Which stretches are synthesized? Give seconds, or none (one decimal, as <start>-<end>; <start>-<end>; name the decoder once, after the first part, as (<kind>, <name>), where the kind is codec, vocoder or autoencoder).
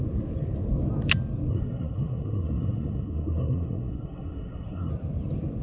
1.5-4.9 (codec, SNAC)